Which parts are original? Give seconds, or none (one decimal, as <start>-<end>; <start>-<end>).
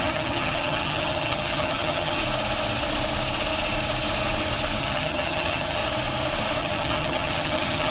2.2-4.8; 5.8-6.6